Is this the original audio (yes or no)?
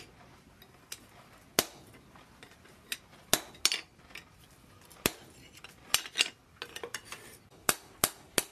yes